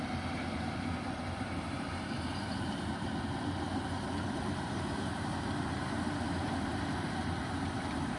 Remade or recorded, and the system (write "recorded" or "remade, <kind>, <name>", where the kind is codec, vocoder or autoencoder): remade, vocoder, BigVGAN v2